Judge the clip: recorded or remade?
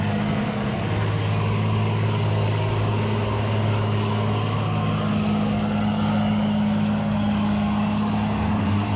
remade